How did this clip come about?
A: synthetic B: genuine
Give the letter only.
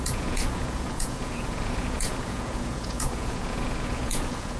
A